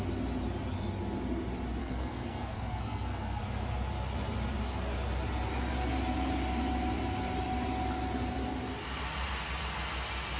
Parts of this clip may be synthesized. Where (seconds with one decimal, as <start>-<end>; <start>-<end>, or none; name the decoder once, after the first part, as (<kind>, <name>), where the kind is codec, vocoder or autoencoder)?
1.8-3.4 (codec, SNAC)